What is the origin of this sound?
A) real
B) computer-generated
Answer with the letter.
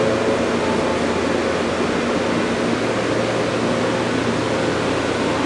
A